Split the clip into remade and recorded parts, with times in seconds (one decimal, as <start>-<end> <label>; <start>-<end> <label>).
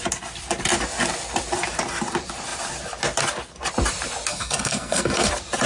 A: 0.0-4.3 recorded; 4.3-5.3 remade; 5.3-5.7 recorded